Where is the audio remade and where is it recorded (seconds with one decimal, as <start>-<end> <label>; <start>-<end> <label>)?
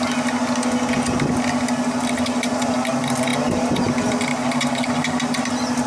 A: 0.0-5.9 recorded